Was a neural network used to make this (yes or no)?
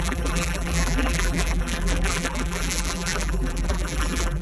yes